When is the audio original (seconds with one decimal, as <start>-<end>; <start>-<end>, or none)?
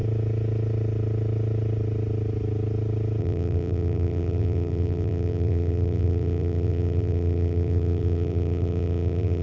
0.0-3.2